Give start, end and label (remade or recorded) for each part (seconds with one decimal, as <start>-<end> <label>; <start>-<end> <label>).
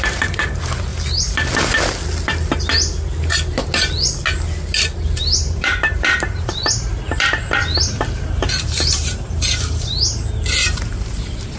0.0-0.9 remade; 0.9-5.2 recorded; 5.2-11.6 remade